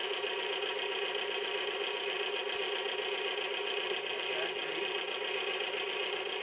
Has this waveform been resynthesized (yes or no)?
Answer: no